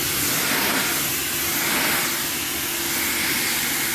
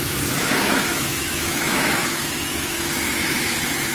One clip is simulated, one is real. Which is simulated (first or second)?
second